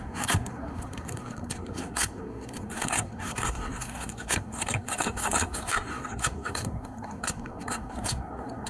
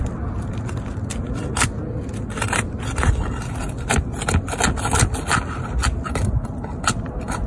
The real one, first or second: second